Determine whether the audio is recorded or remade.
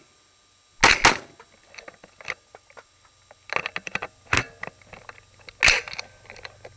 recorded